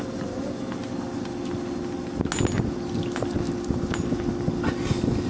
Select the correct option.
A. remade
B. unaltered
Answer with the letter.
B